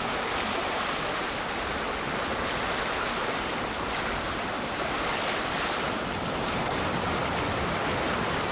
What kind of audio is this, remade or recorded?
recorded